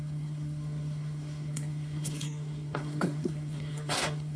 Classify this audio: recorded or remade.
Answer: remade